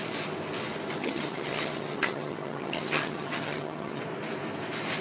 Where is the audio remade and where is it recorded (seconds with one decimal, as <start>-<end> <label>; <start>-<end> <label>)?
0.0-1.0 recorded; 1.0-4.0 remade; 4.0-5.0 recorded